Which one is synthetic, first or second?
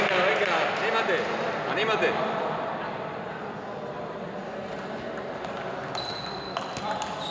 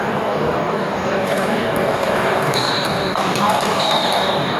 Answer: second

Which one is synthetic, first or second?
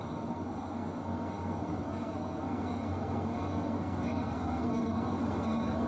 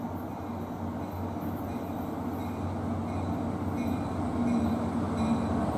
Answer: first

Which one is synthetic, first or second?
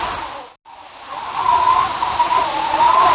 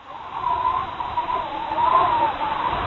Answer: second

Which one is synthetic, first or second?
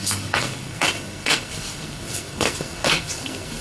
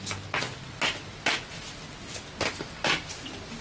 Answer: first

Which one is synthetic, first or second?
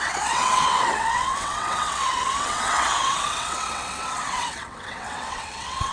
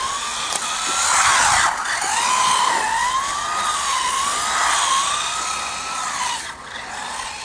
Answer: first